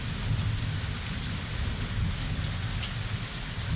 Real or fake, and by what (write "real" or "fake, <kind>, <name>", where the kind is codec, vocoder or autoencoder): real